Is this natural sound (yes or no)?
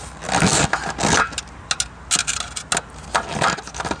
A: yes